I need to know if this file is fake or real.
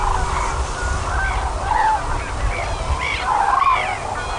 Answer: real